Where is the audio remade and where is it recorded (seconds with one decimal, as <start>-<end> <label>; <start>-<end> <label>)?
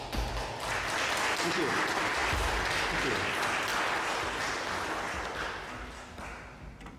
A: 0.0-7.0 recorded